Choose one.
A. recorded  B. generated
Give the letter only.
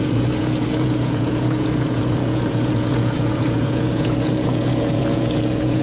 B